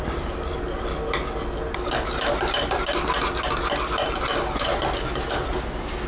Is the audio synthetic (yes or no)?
no